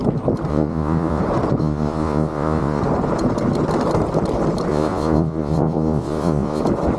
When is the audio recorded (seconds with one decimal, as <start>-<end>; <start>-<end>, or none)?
0.0-0.5; 1.2-1.6; 2.8-4.7; 6.6-7.0